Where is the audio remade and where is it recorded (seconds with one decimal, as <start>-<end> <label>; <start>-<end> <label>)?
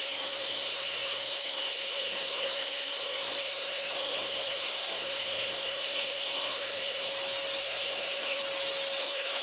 0.0-7.1 remade; 7.1-7.6 recorded; 7.6-8.4 remade; 8.4-9.0 recorded; 9.0-9.4 remade